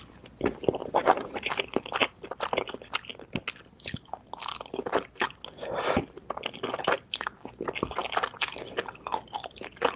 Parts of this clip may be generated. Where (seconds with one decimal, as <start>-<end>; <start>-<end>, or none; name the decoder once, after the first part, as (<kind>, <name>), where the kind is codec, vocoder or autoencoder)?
0.8-1.5 (vocoder, Vocos)